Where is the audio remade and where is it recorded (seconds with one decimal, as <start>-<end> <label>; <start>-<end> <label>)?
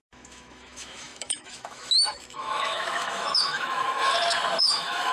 0.0-4.0 remade; 4.0-4.6 recorded; 4.6-5.1 remade